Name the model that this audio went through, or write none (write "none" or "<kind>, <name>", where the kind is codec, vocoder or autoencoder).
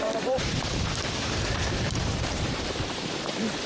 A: vocoder, BigVGAN v2